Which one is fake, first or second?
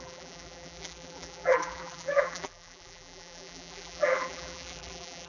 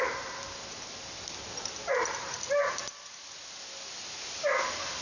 first